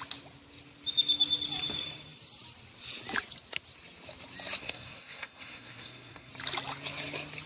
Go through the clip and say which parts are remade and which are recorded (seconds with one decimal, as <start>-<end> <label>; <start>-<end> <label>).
0.0-4.6 recorded; 4.6-6.3 remade; 6.3-7.5 recorded